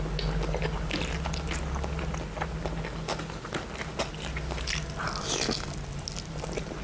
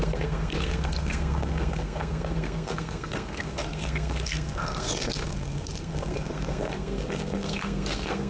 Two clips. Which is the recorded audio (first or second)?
first